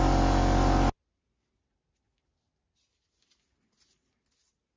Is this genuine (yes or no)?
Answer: yes